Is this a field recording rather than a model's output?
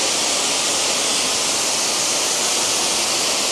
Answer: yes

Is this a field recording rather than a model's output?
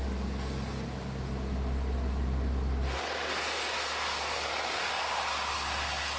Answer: yes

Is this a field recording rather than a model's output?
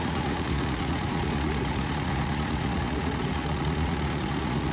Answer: no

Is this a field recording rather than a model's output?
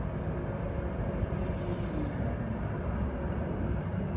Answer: yes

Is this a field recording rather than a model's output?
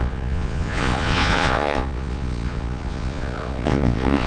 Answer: no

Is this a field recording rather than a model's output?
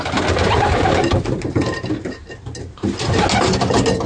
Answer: yes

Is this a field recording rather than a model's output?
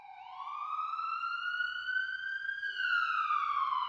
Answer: yes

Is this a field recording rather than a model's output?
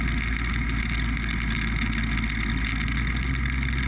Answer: yes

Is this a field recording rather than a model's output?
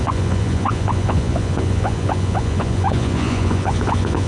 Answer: no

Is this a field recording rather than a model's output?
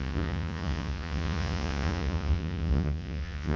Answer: no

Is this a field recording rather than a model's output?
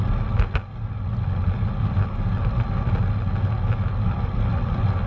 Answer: yes